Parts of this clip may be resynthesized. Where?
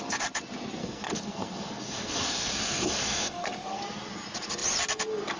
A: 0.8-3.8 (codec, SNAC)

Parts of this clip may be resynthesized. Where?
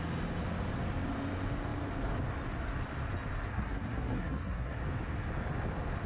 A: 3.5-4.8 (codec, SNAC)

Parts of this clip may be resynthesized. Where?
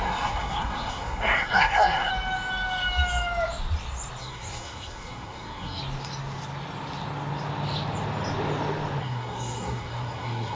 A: 0.0-2.1 (codec, SNAC); 4.2-5.8; 9.0-10.6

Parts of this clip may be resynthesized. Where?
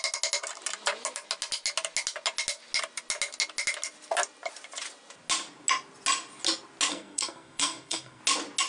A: 6.9-8.2 (codec, SNAC)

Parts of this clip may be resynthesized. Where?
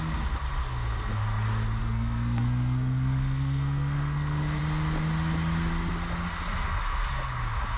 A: 1.8-4.6 (codec, SNAC)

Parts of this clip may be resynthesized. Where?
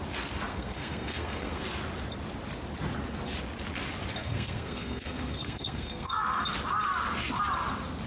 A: 0.5-1.6 (codec, SNAC); 4.2-6.4